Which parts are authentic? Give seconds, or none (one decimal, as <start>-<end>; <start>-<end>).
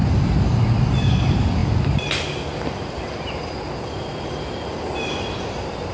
0.0-5.9